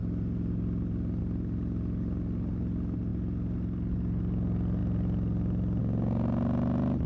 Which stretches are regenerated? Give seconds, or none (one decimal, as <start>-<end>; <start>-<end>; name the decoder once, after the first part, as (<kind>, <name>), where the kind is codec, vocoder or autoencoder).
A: none